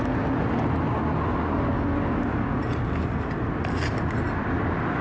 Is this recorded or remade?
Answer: recorded